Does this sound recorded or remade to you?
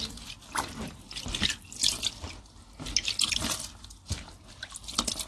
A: recorded